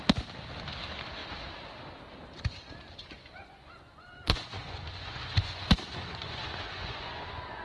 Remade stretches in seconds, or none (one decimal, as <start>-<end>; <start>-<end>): 3.0-7.6